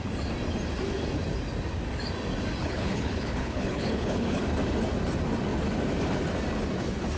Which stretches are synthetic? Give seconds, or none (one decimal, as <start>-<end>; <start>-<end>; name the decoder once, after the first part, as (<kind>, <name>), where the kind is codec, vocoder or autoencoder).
2.6-4.4 (codec, HILCodec)